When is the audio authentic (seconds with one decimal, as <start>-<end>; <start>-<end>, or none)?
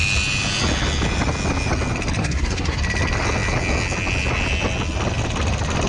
0.0-2.2; 2.8-5.9